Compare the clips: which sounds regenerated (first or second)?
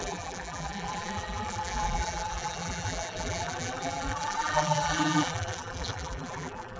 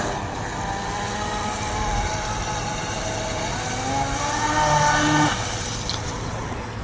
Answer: first